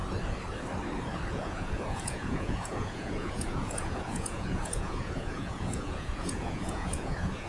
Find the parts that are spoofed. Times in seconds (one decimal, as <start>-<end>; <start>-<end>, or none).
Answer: 1.3-7.5